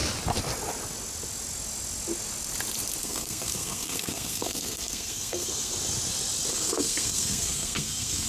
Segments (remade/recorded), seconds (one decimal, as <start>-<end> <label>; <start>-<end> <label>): 0.0-3.0 recorded; 3.0-5.7 remade; 5.7-6.5 recorded; 6.5-8.3 remade